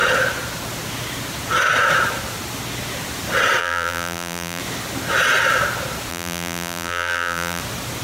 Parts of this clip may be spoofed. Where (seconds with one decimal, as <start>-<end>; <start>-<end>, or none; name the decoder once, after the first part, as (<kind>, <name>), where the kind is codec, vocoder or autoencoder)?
3.6-4.6 (vocoder, BigVGAN v2); 6.1-7.6